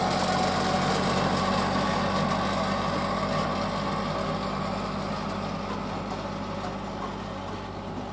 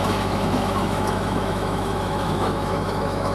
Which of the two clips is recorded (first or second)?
first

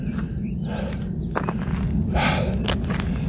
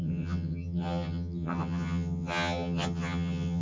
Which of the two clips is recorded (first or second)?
first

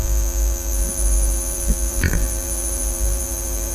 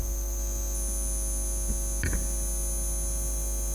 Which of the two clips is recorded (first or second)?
second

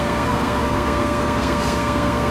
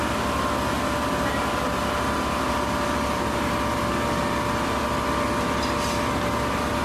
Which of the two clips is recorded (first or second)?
second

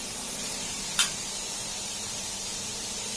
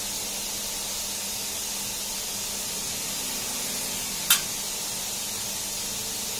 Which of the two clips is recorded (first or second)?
second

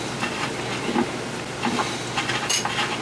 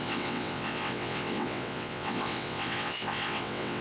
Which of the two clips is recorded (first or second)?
first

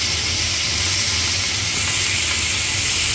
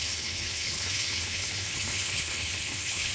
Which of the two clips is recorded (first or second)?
first